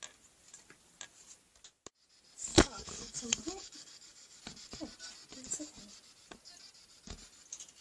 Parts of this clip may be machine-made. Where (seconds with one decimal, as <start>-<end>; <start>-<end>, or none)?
2.5-4.4